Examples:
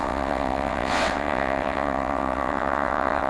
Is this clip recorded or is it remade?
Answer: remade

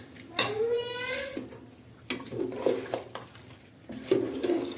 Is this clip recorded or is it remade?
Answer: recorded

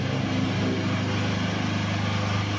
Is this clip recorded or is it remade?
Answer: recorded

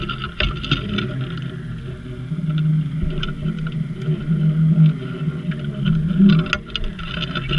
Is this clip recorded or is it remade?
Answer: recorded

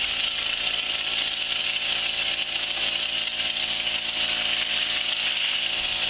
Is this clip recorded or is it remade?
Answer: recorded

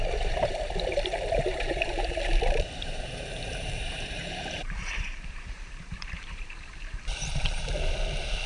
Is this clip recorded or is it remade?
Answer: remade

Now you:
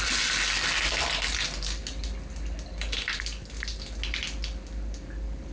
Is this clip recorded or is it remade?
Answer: recorded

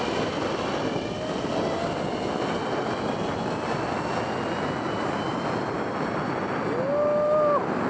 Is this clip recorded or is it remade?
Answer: recorded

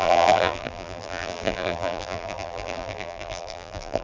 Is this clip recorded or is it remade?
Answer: remade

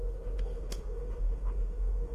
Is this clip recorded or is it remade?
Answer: remade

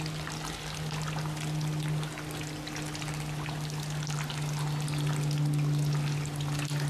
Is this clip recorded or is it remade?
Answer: recorded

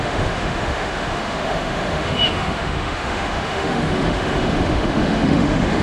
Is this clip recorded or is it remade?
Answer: remade